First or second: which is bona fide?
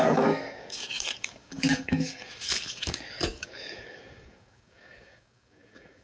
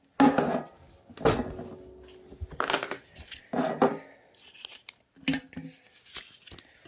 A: second